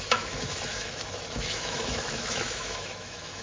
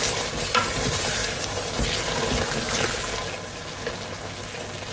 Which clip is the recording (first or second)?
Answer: second